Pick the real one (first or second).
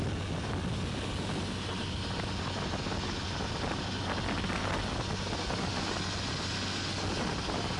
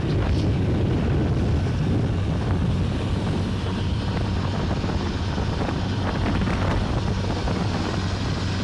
first